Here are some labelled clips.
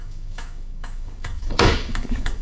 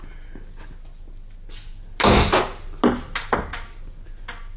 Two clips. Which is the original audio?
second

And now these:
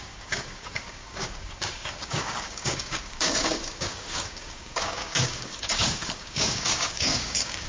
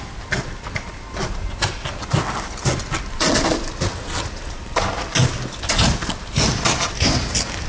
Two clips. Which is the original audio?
second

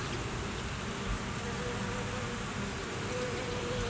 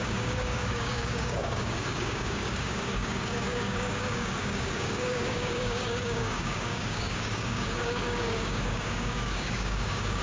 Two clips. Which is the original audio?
first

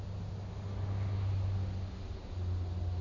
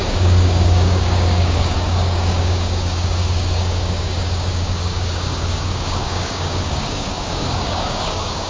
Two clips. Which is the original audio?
first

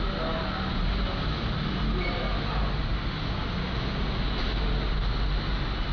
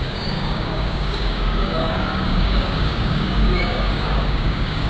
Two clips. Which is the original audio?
first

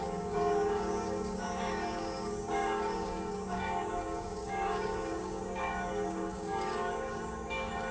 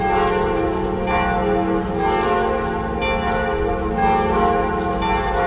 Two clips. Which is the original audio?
second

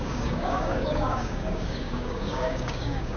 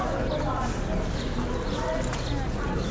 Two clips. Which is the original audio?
second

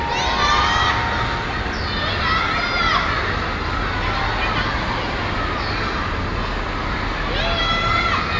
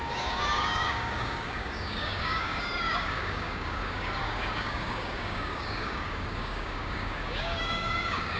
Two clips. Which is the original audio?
first